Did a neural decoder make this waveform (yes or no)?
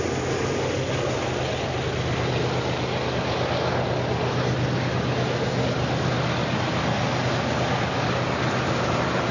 no